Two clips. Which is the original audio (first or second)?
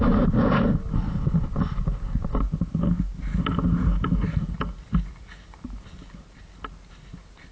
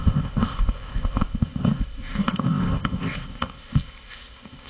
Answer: first